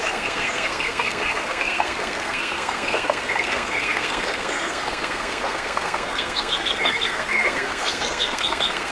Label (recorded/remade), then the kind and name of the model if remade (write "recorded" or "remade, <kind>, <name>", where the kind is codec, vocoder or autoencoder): remade, codec, SNAC